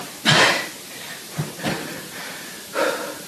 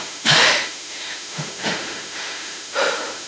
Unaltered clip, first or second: first